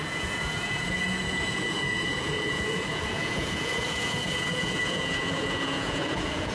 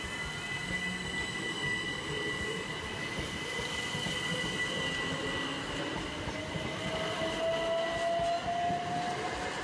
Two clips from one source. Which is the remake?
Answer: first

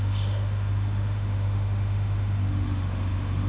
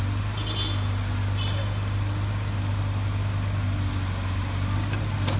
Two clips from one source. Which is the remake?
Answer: first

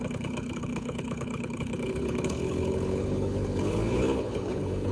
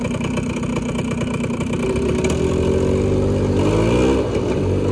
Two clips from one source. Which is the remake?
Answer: first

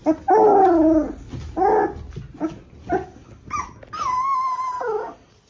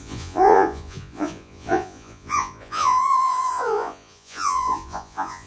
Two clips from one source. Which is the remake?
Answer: second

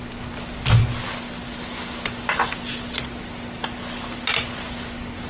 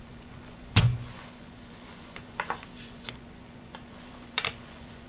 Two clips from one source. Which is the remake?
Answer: second